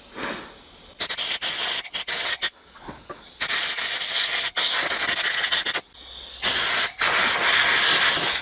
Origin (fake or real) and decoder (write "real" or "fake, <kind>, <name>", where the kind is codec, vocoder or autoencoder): real